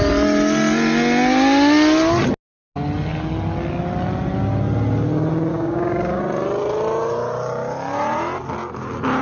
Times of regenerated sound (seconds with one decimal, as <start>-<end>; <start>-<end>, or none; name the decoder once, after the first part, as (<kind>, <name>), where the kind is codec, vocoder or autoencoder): 5.5-6.2 (codec, DAC)